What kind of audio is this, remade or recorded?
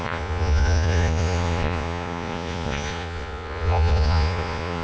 remade